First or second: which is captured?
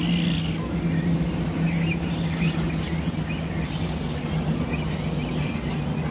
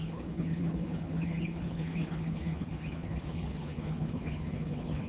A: first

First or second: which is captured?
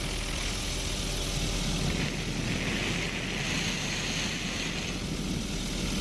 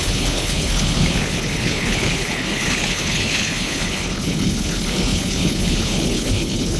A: first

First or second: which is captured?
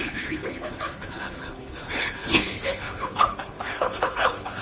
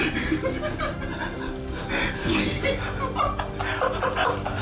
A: second